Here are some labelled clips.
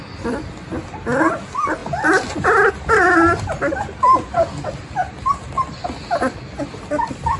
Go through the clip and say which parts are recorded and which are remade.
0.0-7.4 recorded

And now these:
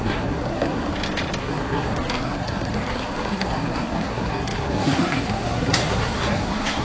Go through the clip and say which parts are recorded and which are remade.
0.0-0.9 remade; 0.9-1.4 recorded; 1.4-6.8 remade

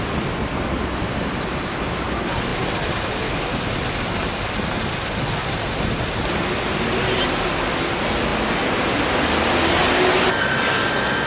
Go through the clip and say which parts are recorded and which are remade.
0.0-11.3 recorded

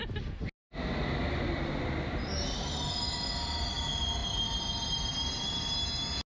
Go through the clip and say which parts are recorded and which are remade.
0.0-6.3 recorded

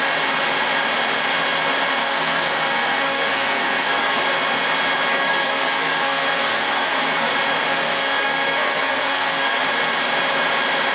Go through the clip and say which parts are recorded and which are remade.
0.0-2.0 recorded; 2.0-4.2 remade; 4.2-5.1 recorded; 5.1-7.3 remade; 7.3-7.7 recorded; 7.7-9.6 remade; 9.6-10.9 recorded

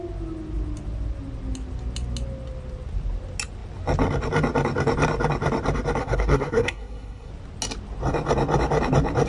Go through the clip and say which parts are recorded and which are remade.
0.0-6.0 recorded; 6.0-7.3 remade; 7.3-9.3 recorded